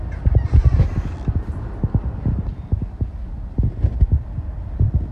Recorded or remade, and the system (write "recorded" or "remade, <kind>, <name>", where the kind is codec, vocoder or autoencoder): recorded